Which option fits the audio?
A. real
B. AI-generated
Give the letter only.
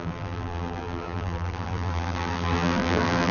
B